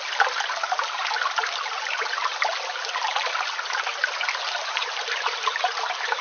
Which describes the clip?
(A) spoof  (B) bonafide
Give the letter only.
B